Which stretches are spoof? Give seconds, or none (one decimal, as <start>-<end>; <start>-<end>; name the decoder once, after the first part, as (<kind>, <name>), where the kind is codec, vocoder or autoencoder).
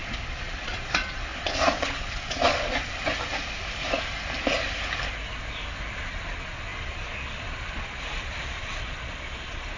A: 0.0-3.1 (vocoder, Vocos); 5.9-9.8